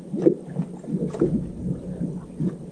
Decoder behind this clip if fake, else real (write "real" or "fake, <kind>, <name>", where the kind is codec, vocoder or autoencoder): real